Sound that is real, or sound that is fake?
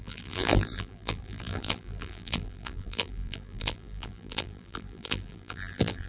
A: fake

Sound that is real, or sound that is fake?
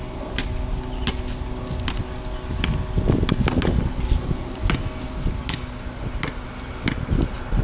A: real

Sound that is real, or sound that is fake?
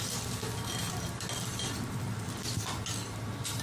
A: real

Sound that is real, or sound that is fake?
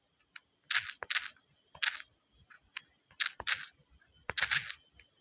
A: real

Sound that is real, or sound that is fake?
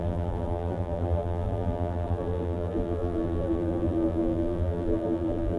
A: fake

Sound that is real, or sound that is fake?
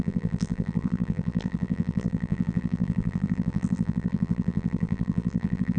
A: fake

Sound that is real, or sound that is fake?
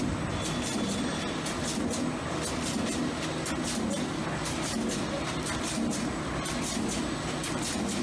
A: real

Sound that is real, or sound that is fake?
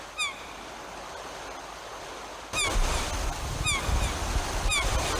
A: real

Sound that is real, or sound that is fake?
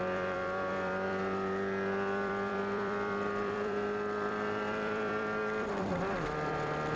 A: fake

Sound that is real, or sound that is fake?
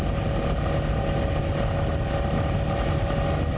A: real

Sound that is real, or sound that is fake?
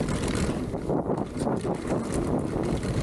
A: fake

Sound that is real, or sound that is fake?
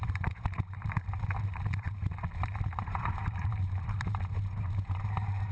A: fake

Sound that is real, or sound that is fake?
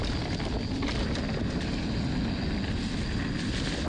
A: real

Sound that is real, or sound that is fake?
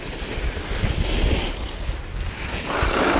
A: real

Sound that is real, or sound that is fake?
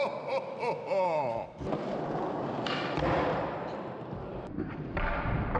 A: fake